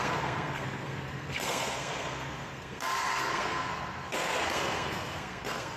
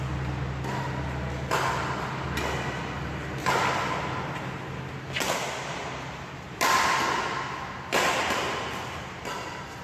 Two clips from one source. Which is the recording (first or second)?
second